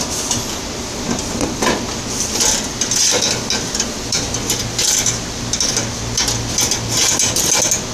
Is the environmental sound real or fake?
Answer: real